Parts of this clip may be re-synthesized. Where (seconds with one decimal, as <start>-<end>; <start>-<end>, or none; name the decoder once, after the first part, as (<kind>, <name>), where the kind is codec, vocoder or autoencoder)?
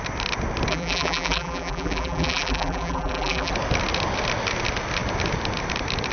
0.7-3.5 (vocoder, BigVGAN v2)